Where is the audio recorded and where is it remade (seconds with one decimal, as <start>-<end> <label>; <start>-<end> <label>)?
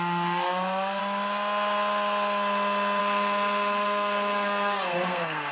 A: 0.0-1.0 remade; 1.0-3.0 recorded; 3.0-5.5 remade